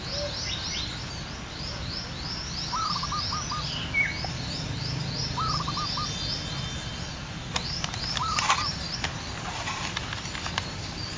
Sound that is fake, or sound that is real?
real